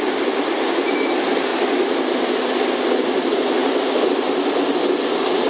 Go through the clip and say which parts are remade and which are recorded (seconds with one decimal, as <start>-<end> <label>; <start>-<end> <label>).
0.0-5.5 recorded